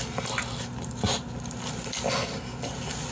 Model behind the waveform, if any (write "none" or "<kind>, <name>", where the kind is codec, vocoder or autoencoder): none